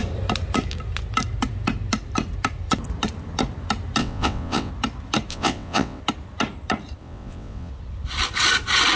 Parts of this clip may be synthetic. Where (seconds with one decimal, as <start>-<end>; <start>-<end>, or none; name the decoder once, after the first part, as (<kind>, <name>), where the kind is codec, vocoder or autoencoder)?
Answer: 4.0-4.7 (vocoder, WaveNeXt); 5.3-6.0; 7.0-7.7